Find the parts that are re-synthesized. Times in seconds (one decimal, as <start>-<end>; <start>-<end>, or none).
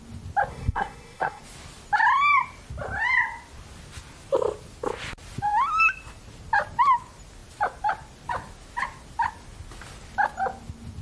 0.5-1.4